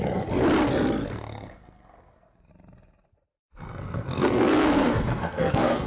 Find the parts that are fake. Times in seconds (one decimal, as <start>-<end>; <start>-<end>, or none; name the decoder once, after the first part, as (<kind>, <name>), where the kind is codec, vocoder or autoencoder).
1.0-2.5 (codec, SNAC); 3.3-5.9